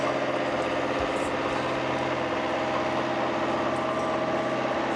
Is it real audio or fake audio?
real